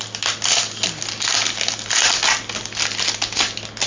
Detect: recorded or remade recorded